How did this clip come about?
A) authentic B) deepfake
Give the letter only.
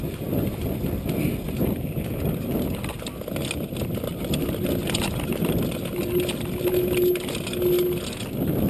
A